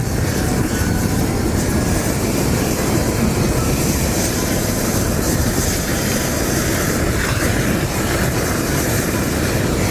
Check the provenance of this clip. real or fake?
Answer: fake